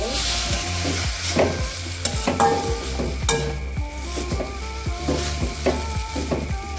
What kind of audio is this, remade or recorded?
recorded